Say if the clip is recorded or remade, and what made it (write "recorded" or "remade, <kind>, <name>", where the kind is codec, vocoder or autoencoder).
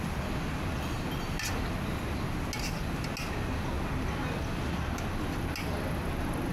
recorded